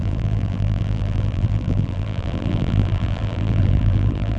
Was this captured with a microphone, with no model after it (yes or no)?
no